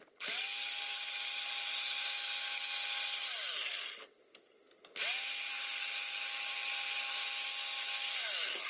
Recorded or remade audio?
recorded